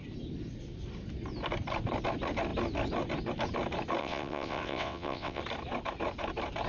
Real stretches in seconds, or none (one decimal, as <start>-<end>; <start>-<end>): 0.0-4.0; 5.4-6.7